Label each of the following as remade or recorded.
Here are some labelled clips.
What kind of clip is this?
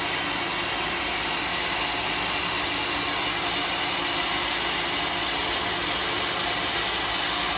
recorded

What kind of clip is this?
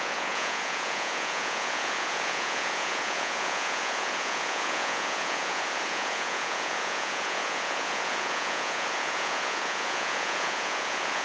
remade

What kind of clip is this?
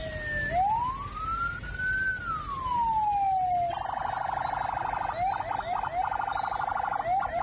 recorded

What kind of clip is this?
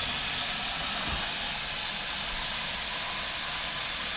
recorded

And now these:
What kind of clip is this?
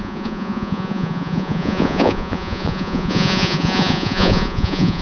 remade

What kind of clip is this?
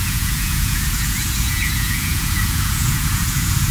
remade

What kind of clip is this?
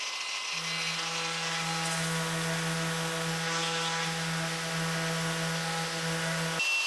recorded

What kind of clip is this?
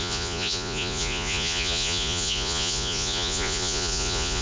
remade